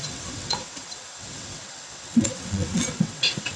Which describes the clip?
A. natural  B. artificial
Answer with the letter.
B